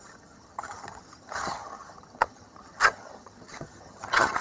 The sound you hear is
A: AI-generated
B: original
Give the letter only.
A